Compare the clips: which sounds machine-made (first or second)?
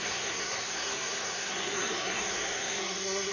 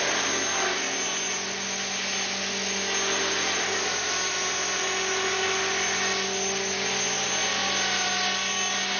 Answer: first